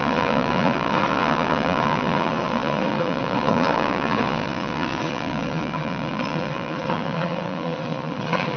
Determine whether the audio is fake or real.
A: fake